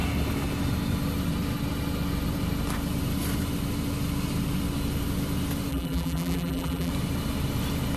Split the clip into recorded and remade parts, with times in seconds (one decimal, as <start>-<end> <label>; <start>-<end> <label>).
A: 0.0-5.7 recorded; 5.7-6.9 remade; 6.9-8.0 recorded